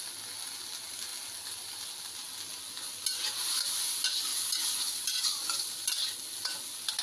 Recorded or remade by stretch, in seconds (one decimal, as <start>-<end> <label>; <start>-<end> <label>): 0.0-7.0 recorded